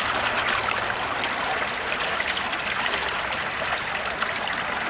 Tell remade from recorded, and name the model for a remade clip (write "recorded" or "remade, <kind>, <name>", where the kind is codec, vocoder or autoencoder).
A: recorded